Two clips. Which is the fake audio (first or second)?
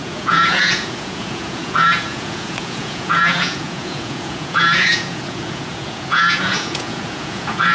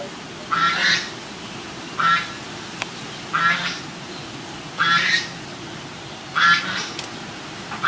first